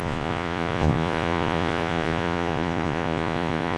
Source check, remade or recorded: remade